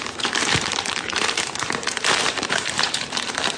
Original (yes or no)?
no